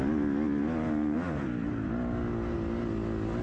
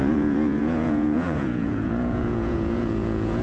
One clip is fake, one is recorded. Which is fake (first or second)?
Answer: second